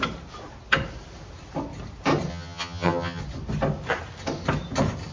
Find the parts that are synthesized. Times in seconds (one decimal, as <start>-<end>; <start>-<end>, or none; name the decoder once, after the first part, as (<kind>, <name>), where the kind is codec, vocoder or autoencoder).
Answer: 2.3-3.2 (vocoder, HiFi-GAN)